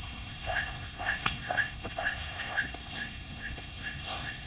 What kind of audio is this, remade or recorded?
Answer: remade